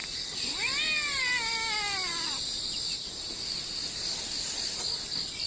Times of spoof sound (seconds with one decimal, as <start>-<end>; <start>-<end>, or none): none